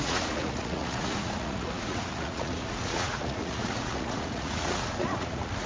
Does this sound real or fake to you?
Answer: fake